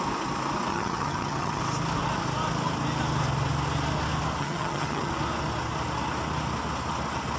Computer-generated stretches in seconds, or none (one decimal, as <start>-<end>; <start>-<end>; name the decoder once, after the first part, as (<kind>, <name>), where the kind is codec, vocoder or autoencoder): 0.7-1.6 (vocoder, HiFi-GAN); 4.4-5.1